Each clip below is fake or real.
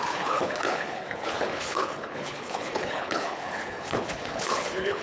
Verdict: fake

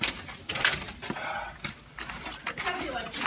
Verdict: fake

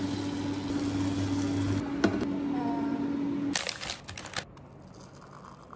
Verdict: real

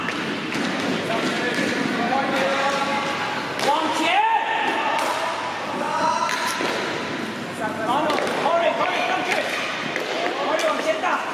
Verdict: real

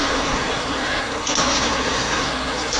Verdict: fake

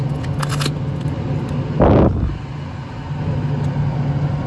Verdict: real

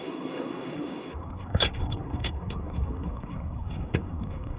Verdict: fake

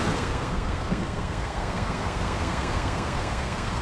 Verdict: fake